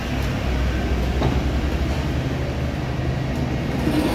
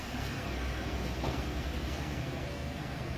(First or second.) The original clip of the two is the first